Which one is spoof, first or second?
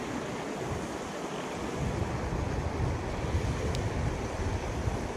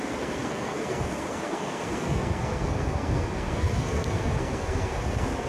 second